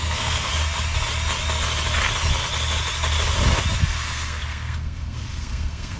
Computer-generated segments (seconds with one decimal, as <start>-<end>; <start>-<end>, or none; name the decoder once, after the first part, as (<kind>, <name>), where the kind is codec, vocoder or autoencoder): 0.0-0.5 (codec, SNAC); 3.8-6.0